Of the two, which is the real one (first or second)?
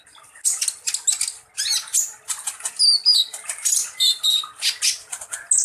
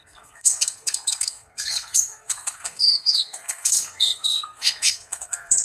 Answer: first